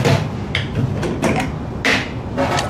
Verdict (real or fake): real